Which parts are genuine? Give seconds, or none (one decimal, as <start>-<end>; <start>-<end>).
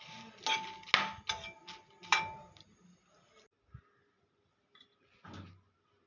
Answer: 0.0-6.1